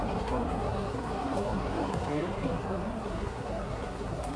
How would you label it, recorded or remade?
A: remade